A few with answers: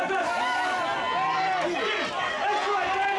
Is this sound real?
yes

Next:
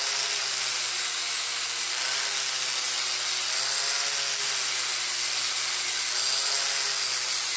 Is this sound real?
yes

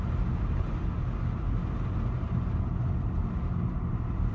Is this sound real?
yes